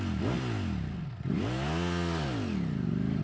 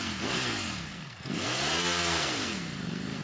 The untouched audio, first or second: first